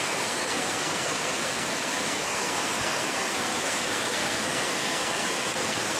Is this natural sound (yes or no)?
no